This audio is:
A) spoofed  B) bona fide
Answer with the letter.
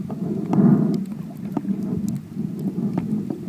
B